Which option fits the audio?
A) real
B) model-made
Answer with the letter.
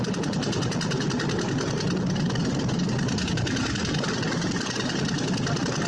A